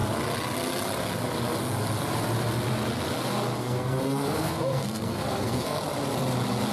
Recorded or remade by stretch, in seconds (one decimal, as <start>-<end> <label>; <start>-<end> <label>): 0.0-3.6 recorded; 3.6-5.8 remade; 5.8-6.7 recorded